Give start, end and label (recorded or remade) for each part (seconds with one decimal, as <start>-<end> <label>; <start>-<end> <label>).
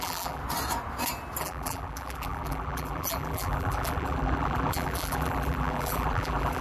0.0-0.4 remade; 0.4-1.4 recorded; 1.4-6.6 remade